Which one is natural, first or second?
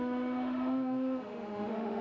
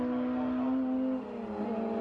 second